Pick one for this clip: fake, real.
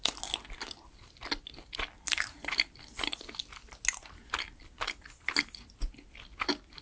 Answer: real